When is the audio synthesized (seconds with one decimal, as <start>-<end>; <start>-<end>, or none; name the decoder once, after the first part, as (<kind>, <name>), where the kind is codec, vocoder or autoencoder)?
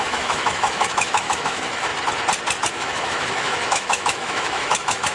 0.0-1.9 (autoencoder, DAC-VAE); 2.7-5.1